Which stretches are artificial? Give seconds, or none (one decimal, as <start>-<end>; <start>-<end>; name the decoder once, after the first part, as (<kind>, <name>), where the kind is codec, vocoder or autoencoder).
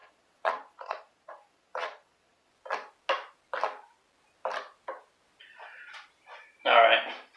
0.0-2.5 (vocoder, Vocos)